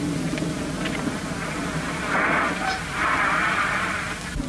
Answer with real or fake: real